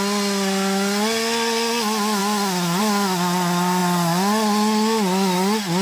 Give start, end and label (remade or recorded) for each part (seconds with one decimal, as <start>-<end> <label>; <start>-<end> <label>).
0.0-5.8 recorded